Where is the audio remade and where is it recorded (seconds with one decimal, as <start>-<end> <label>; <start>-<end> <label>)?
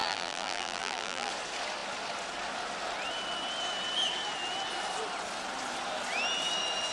0.0-1.3 remade; 1.3-6.9 recorded